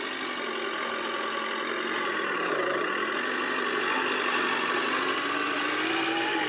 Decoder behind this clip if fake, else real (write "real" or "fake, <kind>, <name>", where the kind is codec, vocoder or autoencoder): real